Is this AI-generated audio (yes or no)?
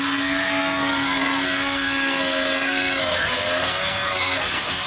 yes